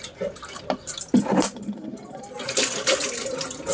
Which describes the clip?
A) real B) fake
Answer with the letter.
A